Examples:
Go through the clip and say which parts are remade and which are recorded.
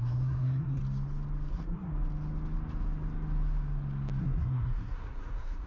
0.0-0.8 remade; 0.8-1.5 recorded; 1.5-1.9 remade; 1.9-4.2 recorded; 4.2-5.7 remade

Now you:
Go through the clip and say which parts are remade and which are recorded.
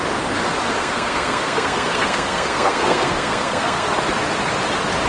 0.0-0.8 recorded; 0.8-3.9 remade; 3.9-5.1 recorded